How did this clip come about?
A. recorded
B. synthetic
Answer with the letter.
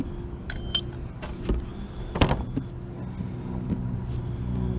A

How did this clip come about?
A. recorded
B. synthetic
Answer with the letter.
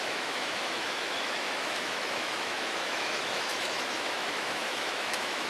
B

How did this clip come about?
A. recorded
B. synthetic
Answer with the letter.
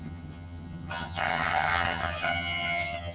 B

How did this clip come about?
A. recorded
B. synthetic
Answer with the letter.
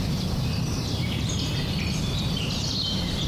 B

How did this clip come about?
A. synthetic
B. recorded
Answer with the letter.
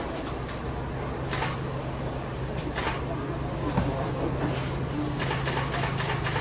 B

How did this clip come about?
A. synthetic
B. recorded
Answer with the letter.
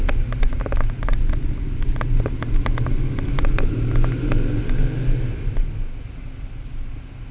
B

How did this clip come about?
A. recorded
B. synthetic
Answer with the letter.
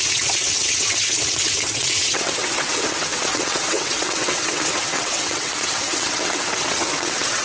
B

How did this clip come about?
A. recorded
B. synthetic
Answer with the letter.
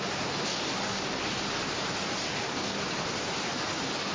A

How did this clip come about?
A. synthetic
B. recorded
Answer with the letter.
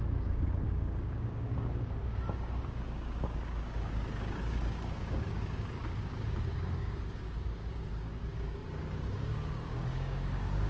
A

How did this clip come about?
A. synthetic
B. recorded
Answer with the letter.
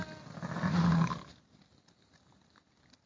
B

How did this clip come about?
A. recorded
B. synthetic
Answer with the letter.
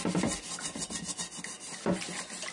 A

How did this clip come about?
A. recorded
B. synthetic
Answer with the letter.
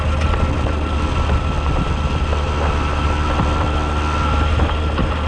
A